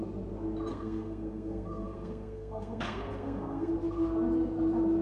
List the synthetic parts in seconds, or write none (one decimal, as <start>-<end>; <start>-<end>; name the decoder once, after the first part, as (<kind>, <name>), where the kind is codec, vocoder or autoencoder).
0.7-3.7 (codec, SNAC)

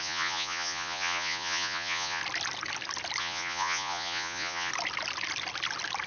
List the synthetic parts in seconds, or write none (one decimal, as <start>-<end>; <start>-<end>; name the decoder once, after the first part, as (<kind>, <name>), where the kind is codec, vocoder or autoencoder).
0.0-2.2 (vocoder, Vocos); 3.2-4.7

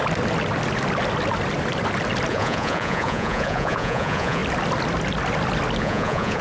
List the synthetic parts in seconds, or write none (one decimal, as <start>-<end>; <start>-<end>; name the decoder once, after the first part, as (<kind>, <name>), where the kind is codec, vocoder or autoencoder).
2.3-4.4 (vocoder, Vocos); 5.8-6.4